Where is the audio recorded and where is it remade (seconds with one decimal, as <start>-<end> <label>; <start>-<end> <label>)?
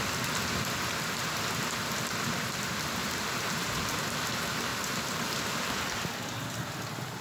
0.0-3.0 recorded; 3.0-3.9 remade; 3.9-7.2 recorded